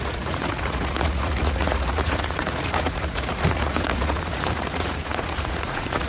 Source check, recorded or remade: remade